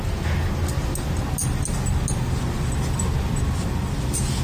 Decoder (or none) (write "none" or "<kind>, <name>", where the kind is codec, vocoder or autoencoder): none